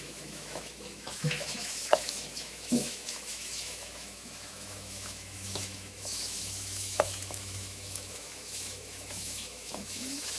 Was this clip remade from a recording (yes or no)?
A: yes